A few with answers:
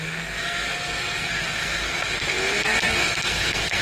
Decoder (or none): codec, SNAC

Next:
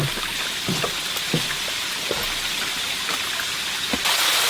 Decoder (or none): none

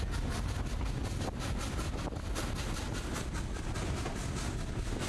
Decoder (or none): none